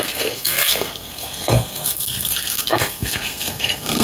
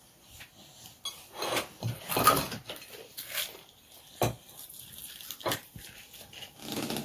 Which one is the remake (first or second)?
first